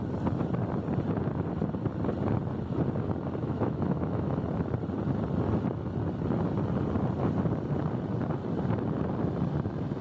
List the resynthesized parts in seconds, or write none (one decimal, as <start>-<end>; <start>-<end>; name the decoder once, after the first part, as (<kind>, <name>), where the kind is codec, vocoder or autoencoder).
3.4-4.4 (autoencoder, DAC-VAE)